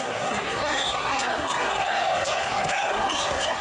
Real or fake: fake